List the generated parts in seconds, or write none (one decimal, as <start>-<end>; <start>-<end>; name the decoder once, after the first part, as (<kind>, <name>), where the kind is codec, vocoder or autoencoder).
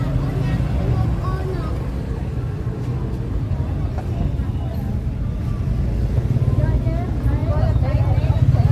none